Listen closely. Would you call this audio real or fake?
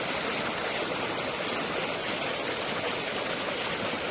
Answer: real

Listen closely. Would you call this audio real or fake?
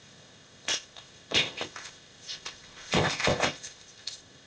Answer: fake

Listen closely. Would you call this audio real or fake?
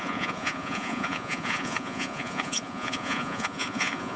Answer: fake